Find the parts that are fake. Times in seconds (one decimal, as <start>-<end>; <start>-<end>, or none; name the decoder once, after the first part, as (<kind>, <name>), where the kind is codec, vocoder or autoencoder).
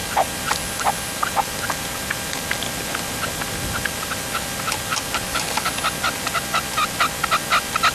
4.9-5.7 (codec, DAC)